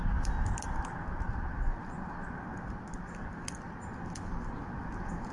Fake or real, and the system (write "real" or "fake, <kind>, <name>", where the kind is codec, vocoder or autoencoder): real